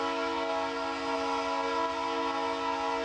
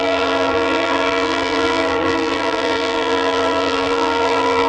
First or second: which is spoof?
second